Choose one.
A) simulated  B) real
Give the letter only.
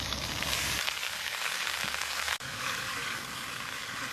A